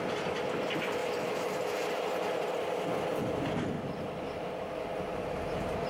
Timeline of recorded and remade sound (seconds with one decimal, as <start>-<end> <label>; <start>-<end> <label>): 0.0-5.9 recorded